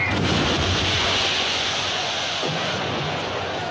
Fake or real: fake